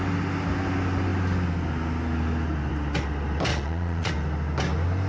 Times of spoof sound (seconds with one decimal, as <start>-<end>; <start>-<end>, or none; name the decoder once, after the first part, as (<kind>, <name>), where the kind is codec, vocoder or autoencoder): 3.5-4.1 (vocoder, Vocos)